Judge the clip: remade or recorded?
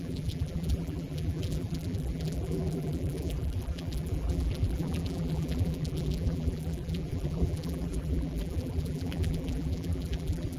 remade